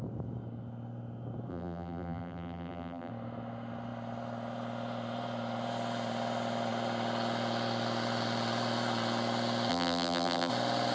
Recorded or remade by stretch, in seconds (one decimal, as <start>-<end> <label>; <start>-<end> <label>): 0.0-1.5 recorded; 1.5-3.1 remade; 3.1-9.7 recorded; 9.7-10.5 remade; 10.5-10.9 recorded